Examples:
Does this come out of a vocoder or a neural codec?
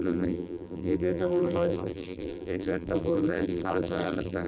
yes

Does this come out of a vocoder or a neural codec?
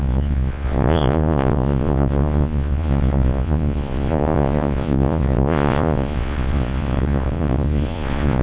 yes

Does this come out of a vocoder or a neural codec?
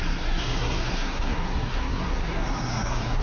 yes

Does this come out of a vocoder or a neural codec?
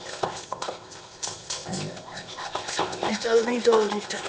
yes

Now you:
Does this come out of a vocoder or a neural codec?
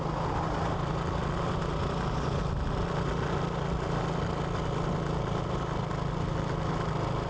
no